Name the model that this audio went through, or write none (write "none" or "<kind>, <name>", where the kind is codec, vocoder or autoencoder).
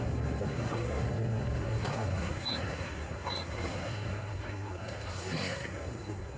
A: codec, SNAC